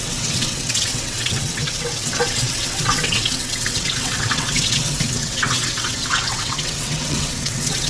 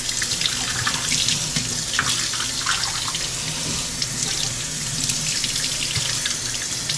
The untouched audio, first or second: second